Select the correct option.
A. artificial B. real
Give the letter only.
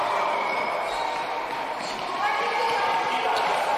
B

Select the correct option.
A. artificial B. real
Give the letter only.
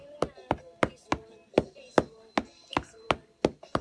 B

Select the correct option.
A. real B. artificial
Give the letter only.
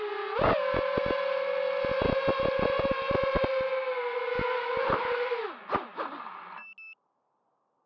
A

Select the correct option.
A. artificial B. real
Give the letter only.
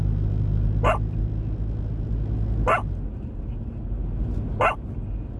B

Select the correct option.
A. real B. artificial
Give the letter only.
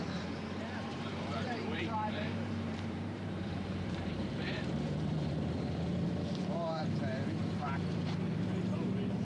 B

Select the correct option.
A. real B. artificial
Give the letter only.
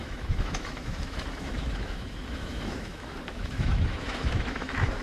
B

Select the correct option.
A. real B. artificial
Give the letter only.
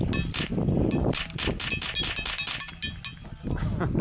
A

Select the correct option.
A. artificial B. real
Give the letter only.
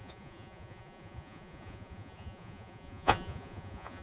A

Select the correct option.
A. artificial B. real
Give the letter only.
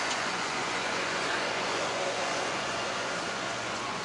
A